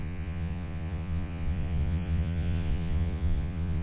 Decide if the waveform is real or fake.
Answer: fake